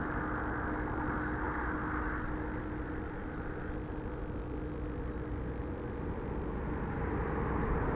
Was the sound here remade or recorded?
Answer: recorded